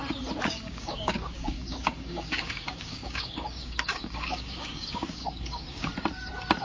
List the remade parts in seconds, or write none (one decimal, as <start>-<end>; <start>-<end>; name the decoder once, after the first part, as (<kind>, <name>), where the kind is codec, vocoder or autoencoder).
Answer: 0.5-5.9 (codec, DAC)